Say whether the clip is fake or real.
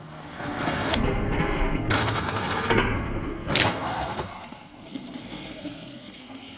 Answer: fake